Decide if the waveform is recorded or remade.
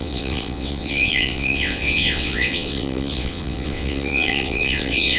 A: remade